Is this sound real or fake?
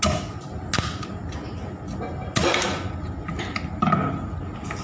real